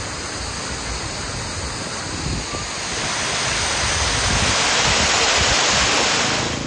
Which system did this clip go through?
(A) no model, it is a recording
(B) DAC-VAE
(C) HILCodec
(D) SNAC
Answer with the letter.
A